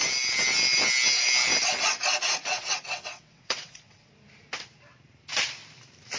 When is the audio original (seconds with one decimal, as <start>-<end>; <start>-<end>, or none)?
0.0-2.4; 4.1-6.2